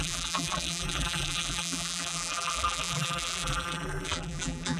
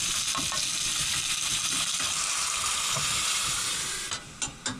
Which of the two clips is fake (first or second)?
first